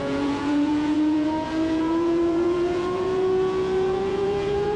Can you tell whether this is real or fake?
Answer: fake